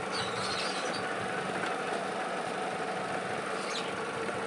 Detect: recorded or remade recorded